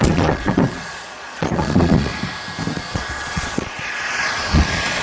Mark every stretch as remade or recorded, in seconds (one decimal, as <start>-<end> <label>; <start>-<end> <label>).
0.0-2.1 remade; 2.1-2.7 recorded; 2.7-5.0 remade